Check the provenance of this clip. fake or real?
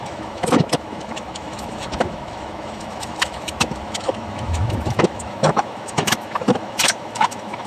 fake